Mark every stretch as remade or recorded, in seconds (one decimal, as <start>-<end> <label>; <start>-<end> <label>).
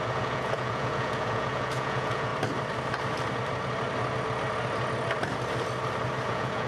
0.0-2.3 remade; 2.3-6.3 recorded; 6.3-6.7 remade